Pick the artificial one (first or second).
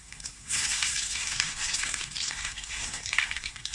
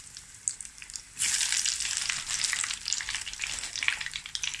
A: first